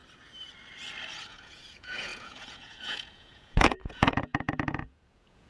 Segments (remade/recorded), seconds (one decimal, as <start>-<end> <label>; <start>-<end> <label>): 0.0-1.3 recorded; 1.3-5.5 remade